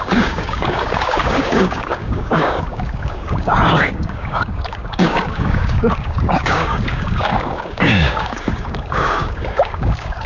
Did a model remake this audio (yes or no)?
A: yes